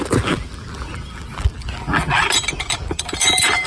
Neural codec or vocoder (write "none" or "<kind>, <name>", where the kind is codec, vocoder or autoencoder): vocoder, BigVGAN v2